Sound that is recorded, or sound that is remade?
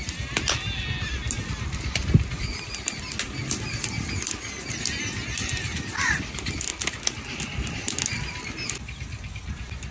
recorded